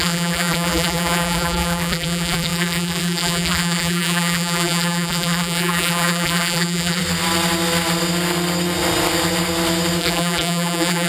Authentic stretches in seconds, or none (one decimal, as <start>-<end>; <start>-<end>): 7.0-10.0